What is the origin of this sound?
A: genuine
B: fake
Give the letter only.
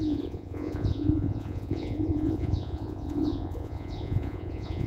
B